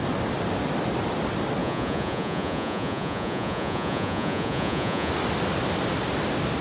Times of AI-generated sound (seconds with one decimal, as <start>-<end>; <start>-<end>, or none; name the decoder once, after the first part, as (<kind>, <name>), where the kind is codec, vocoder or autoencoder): 1.6-5.1 (vocoder, Vocos)